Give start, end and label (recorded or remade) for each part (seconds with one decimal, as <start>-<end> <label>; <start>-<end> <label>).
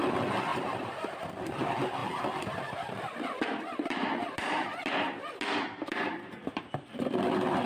0.0-0.5 recorded; 0.5-1.3 remade; 1.3-7.7 recorded